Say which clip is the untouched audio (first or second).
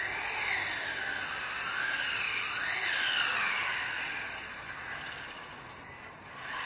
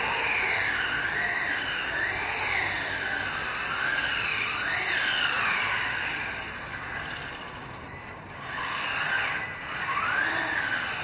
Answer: first